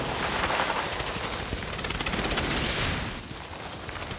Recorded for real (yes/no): yes